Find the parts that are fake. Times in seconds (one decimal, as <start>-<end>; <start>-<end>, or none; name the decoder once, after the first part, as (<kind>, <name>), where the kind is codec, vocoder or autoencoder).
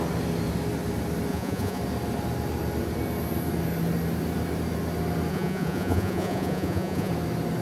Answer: 1.3-1.8 (vocoder, Vocos); 5.3-7.1